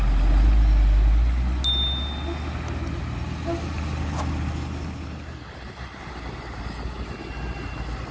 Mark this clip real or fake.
real